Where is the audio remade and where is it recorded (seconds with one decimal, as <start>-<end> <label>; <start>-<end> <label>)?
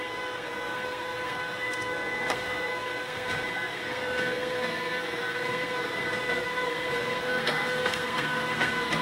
0.0-9.0 remade